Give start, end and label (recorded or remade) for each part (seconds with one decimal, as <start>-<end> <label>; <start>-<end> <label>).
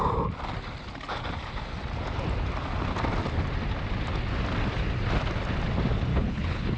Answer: 0.0-6.1 recorded; 6.1-6.8 remade